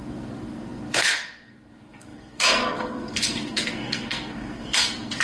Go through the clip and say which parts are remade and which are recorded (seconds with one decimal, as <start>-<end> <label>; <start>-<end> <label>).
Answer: 0.0-5.2 remade